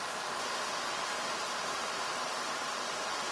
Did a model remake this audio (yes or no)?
no